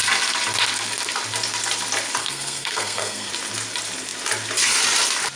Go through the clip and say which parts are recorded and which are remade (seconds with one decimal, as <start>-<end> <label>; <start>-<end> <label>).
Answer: 0.0-2.2 recorded; 2.2-3.3 remade; 3.3-5.4 recorded